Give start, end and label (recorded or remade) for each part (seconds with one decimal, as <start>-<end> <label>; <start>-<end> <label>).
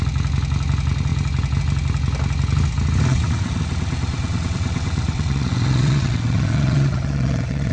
0.0-3.1 recorded; 3.1-7.7 remade